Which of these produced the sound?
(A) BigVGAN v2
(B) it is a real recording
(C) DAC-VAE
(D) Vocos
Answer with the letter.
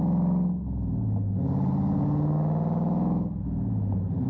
B